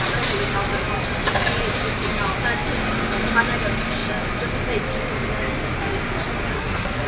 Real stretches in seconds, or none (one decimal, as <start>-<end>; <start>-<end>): 0.0-6.5